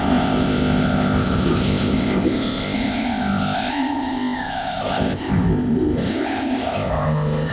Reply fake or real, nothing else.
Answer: fake